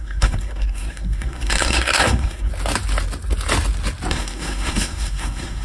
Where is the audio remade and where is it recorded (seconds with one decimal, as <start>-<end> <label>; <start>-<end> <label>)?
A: 0.0-2.5 remade; 2.5-4.1 recorded; 4.1-5.6 remade